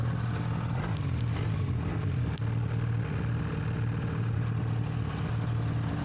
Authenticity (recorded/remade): recorded